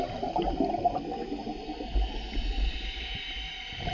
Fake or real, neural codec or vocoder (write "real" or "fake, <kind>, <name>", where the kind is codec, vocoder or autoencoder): real